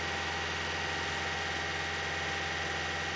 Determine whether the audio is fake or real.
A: real